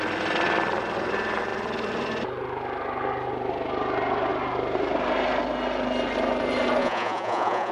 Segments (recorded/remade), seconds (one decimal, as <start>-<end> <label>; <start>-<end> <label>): 0.0-6.8 recorded; 6.8-7.7 remade